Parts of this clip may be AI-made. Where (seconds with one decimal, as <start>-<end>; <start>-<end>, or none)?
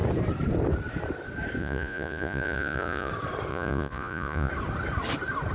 1.6-3.1; 3.5-4.5